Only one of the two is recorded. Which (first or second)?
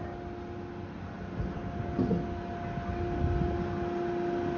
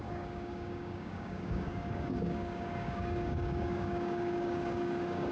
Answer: first